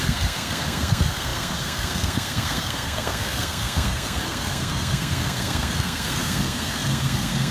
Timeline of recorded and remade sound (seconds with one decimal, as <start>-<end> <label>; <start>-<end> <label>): 0.0-7.5 remade